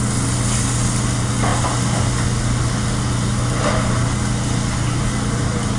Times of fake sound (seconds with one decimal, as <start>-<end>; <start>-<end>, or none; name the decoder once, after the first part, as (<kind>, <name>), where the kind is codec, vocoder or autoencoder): none